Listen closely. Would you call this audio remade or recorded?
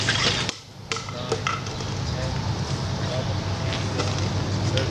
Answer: recorded